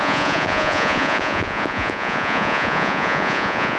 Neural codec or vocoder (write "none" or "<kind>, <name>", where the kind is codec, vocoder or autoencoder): vocoder, Vocos